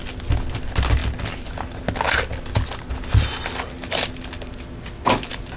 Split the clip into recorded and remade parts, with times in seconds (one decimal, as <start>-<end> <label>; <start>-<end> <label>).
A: 0.0-5.6 recorded